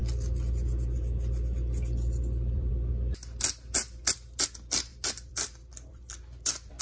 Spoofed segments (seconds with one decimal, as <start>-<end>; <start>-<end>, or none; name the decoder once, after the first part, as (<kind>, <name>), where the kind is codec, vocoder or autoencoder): 0.0-2.7 (vocoder, BigVGAN v2); 4.9-6.8